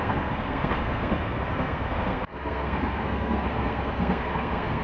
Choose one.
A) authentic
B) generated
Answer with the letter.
B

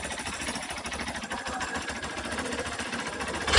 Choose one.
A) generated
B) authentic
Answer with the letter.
B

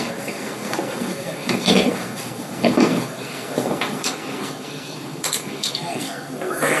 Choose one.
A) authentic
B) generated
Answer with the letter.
B